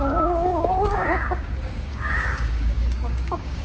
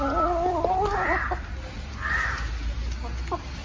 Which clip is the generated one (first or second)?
first